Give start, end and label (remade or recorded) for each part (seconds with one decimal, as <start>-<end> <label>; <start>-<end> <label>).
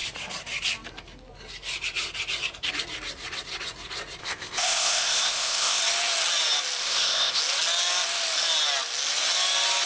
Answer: 0.0-4.2 recorded; 4.2-5.8 remade; 5.8-6.8 recorded; 6.8-7.4 remade; 7.4-9.9 recorded